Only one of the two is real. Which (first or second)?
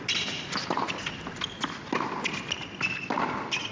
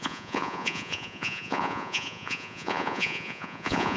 first